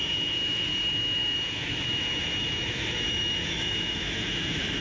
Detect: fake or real fake